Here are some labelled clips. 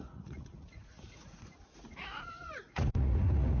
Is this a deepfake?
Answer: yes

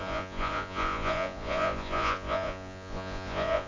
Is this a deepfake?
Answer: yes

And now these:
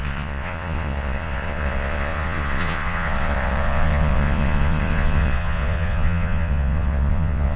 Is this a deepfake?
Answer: yes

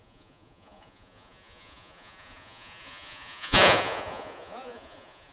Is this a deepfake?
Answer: yes